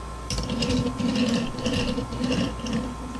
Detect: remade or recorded recorded